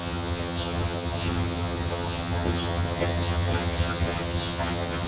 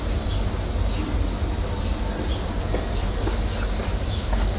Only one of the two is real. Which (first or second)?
second